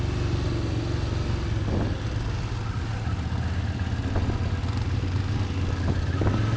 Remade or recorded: recorded